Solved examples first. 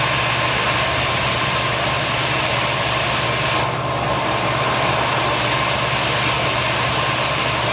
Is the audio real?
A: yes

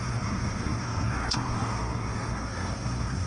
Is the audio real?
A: no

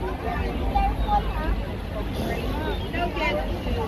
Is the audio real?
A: yes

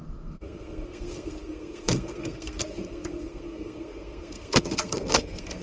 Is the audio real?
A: no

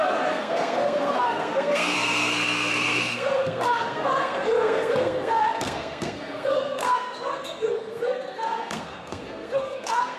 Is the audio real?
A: no